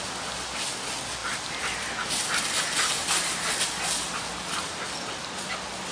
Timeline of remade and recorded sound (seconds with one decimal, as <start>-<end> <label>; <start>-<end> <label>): 0.0-5.9 recorded